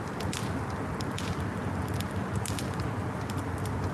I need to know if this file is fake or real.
real